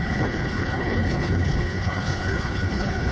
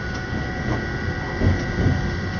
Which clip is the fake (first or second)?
first